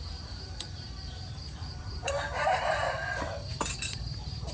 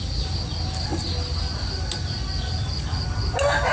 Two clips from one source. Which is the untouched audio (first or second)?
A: second